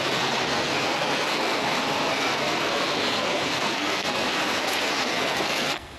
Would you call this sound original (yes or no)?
no